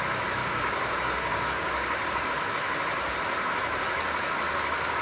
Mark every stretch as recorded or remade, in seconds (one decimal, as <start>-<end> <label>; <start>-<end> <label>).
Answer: 0.0-0.4 recorded; 0.4-2.3 remade; 2.3-5.0 recorded

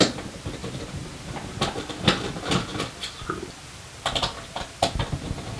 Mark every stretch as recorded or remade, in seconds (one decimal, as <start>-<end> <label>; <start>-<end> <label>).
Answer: 0.0-0.6 recorded; 0.6-3.8 remade; 3.8-5.6 recorded

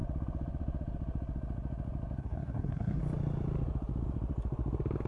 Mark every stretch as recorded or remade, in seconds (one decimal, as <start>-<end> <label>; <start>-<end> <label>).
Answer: 0.0-2.2 recorded; 2.2-3.0 remade; 3.0-5.1 recorded

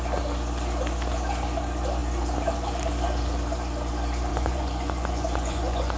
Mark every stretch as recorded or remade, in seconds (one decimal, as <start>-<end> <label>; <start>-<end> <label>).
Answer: 0.0-4.3 recorded; 4.3-6.0 remade